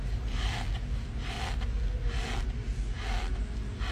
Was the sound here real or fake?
real